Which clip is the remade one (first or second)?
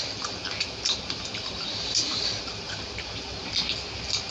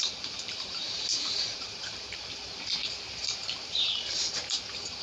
second